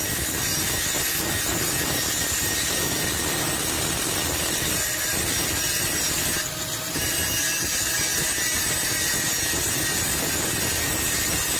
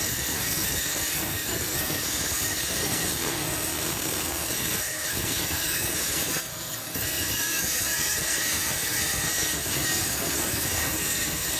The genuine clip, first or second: first